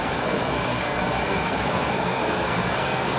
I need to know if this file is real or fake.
fake